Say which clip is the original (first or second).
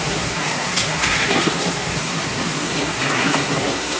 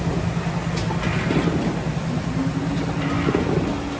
second